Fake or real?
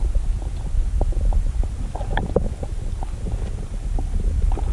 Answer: real